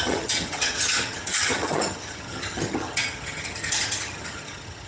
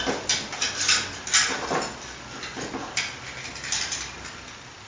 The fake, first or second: first